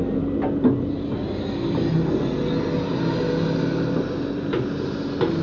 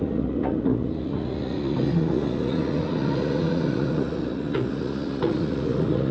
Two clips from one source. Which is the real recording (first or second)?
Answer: first